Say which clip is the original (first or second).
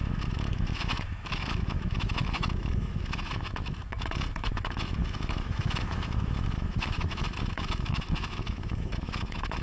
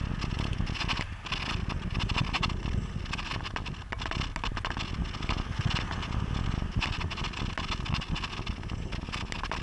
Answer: second